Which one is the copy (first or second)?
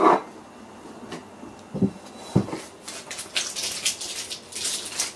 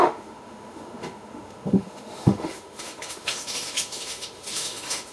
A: second